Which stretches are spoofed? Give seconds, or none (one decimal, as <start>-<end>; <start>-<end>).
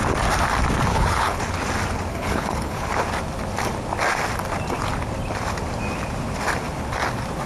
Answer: 0.9-1.4; 2.1-2.9